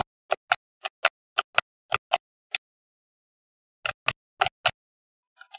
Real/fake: real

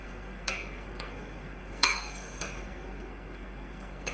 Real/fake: fake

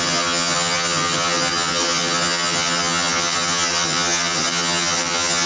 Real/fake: fake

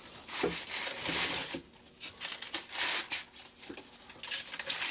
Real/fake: real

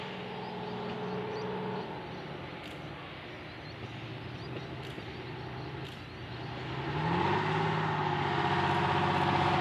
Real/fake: real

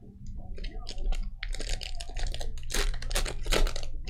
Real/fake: real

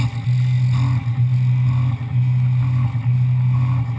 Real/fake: real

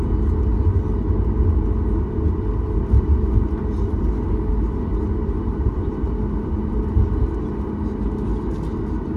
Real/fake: real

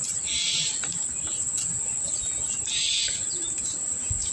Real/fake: real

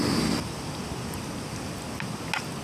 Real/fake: real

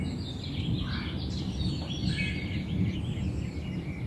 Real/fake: real